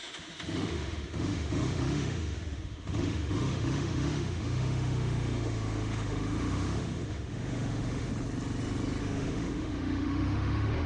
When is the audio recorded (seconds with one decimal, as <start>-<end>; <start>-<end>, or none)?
8.1-9.0